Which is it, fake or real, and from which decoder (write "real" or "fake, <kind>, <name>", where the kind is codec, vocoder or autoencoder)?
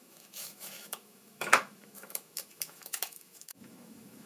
fake, autoencoder, DAC-VAE